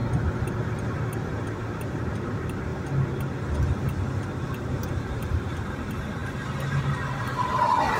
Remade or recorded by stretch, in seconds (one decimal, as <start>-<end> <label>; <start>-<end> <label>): 0.0-0.5 recorded; 0.5-2.7 remade; 2.7-4.4 recorded; 4.4-8.0 remade